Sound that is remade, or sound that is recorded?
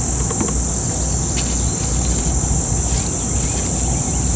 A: recorded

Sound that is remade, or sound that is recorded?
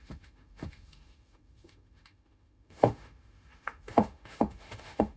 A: remade